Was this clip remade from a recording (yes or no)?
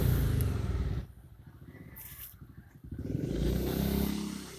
no